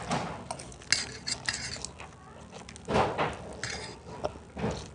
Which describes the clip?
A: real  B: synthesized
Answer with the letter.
A